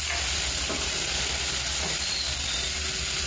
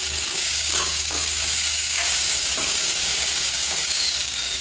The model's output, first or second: second